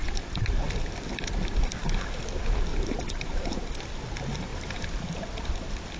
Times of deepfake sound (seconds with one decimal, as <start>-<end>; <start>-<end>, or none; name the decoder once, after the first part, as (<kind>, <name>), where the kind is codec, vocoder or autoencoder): 2.7-3.8 (vocoder, BigVGAN v2); 4.5-5.1